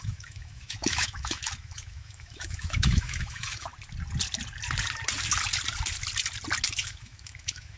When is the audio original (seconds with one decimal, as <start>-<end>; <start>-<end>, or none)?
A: 3.7-6.8